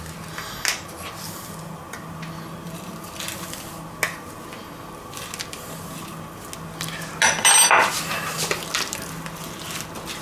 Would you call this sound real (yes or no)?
yes